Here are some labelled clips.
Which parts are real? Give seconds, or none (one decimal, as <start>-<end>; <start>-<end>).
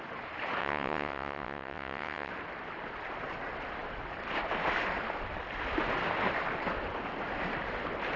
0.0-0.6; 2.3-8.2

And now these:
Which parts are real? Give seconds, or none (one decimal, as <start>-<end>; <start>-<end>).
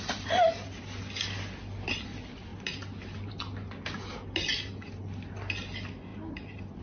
0.0-6.8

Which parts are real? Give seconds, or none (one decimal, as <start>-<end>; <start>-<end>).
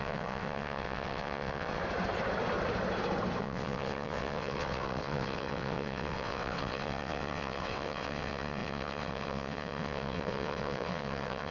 1.8-3.4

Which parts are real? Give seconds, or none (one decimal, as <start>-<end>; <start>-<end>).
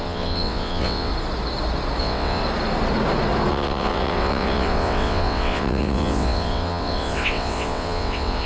1.1-2.0; 2.4-3.5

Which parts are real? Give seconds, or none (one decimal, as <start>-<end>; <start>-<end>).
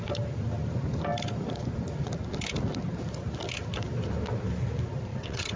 0.0-5.1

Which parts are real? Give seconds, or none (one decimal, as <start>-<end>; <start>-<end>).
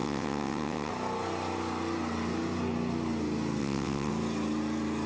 0.9-3.6; 4.1-5.1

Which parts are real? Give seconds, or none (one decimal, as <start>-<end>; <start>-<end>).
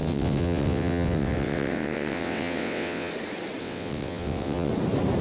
3.1-3.6; 4.7-5.2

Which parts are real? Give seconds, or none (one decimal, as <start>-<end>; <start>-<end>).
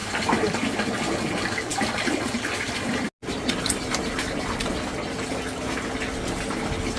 0.0-7.0